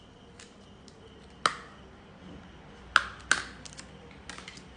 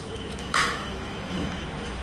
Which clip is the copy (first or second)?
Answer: second